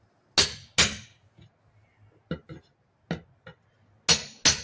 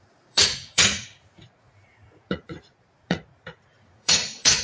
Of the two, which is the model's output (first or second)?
second